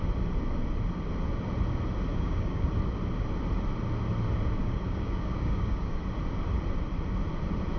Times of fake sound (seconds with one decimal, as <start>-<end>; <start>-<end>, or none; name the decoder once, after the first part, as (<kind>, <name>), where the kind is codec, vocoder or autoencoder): 2.1-2.7 (codec, DAC); 4.6-6.0